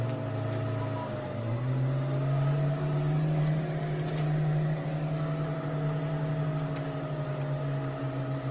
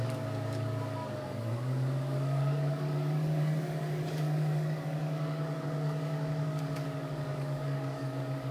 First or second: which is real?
first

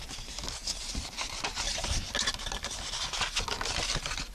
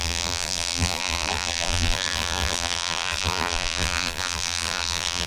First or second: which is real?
first